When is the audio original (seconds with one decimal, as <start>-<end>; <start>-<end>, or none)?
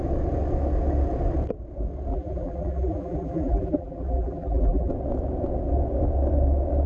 0.0-2.1; 4.9-6.9